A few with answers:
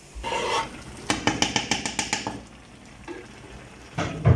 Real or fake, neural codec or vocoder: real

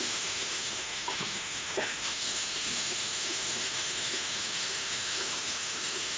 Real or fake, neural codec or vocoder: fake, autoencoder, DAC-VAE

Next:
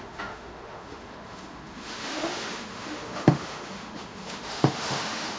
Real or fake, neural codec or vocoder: fake, autoencoder, DAC-VAE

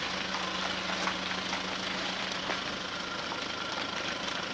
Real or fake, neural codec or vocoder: real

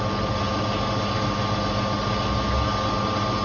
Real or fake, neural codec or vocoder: real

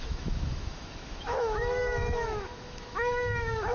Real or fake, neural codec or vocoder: fake, autoencoder, DAC-VAE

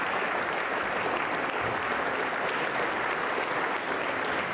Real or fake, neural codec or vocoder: real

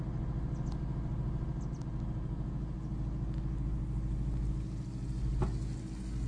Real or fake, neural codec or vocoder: real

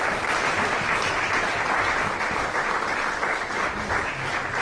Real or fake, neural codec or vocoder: real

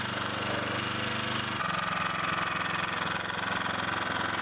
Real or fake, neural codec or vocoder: real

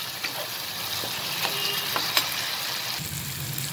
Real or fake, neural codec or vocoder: real